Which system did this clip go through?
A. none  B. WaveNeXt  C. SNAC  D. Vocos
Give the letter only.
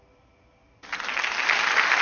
A